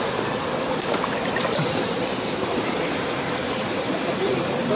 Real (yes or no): yes